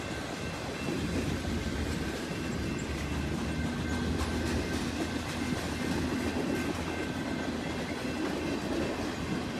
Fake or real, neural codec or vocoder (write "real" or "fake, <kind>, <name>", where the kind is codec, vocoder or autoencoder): real